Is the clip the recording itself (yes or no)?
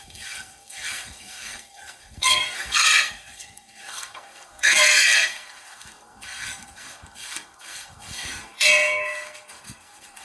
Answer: no